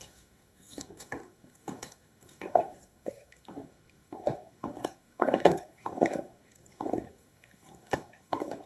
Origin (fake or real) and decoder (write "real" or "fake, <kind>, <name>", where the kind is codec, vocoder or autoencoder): fake, codec, SNAC